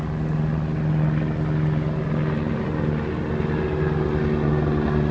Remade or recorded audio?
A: recorded